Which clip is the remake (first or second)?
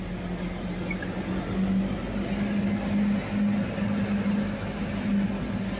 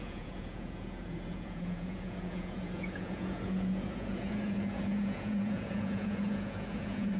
second